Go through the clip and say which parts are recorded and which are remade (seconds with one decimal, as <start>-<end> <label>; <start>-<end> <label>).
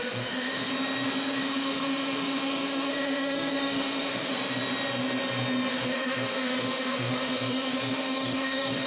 0.0-0.7 remade; 0.7-1.4 recorded; 1.4-4.3 remade; 4.3-5.7 recorded; 5.7-8.9 remade